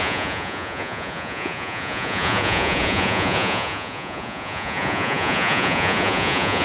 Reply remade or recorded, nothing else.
remade